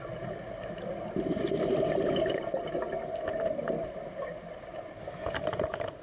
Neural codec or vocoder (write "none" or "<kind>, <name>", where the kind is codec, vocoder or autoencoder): none